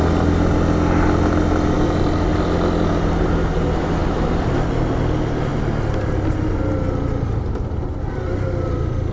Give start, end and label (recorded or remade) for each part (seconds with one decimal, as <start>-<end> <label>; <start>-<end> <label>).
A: 0.0-4.0 recorded; 4.0-4.5 remade; 4.5-5.5 recorded; 5.5-6.7 remade; 6.7-9.1 recorded